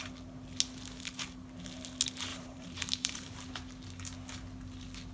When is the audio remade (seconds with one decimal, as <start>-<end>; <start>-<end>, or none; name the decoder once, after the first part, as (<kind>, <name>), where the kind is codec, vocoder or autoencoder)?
2.3-3.3 (vocoder, BigVGAN v2)